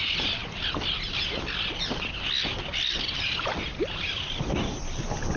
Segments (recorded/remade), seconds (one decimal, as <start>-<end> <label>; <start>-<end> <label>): 0.0-5.4 recorded

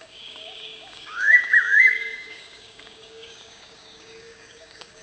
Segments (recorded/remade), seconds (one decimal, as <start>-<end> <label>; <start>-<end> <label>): 0.0-5.0 remade

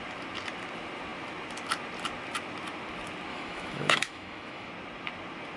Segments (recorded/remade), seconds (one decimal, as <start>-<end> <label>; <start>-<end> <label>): 0.0-3.3 recorded; 3.3-4.7 remade; 4.7-5.6 recorded

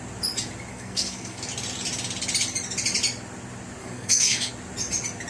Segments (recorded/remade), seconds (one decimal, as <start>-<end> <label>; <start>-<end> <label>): 0.0-0.7 recorded; 0.7-1.4 remade; 1.4-3.8 recorded; 3.8-4.5 remade; 4.5-5.3 recorded

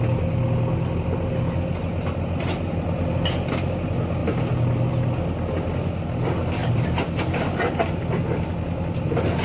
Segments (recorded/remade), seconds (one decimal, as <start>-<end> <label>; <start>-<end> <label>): 0.0-6.6 recorded; 6.6-7.2 remade; 7.2-9.4 recorded

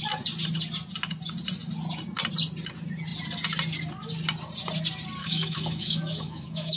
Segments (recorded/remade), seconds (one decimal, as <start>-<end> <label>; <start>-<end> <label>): 0.0-5.2 recorded; 5.2-6.8 remade